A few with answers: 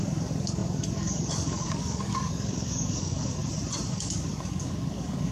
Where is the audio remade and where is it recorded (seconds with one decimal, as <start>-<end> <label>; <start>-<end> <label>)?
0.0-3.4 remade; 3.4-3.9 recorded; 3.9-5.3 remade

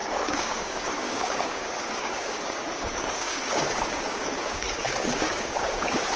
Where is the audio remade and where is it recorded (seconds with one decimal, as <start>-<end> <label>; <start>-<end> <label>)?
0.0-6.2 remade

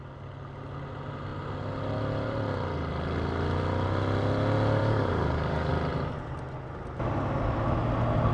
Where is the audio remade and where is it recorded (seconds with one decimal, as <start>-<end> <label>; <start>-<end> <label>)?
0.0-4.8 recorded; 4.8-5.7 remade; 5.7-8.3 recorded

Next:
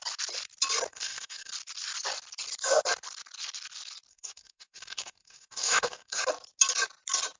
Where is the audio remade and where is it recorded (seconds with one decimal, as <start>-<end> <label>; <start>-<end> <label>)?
0.0-0.9 recorded; 0.9-1.5 remade; 1.5-4.1 recorded; 4.1-6.2 remade; 6.2-7.4 recorded

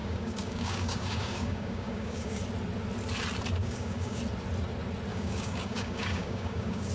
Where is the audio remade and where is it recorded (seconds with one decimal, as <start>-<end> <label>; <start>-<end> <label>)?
0.0-2.4 remade; 2.4-3.6 recorded; 3.6-4.2 remade; 4.2-5.1 recorded; 5.1-6.9 remade

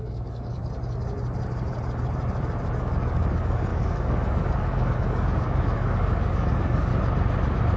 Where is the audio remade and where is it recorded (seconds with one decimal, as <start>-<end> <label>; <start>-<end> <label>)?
0.0-0.6 remade; 0.6-2.8 recorded; 2.8-6.9 remade; 6.9-7.8 recorded

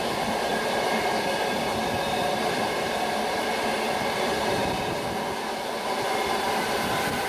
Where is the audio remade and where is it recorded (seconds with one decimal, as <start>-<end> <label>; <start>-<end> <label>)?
0.0-7.3 recorded

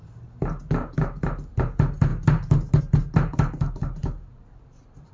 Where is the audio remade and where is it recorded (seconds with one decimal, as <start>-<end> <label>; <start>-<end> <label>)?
0.0-5.1 recorded